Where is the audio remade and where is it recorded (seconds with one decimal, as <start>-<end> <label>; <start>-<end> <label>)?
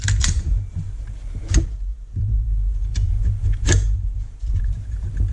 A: 0.0-5.3 remade